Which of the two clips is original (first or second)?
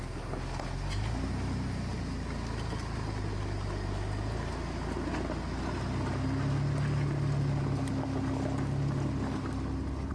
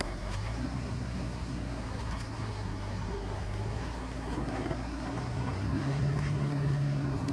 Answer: first